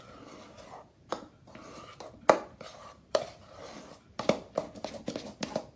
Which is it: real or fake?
real